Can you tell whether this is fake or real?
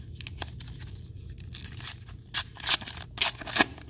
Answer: real